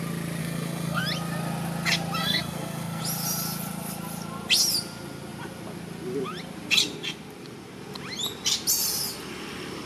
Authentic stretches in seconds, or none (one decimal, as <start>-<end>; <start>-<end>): 0.0-0.4; 1.0-2.2; 3.0-9.9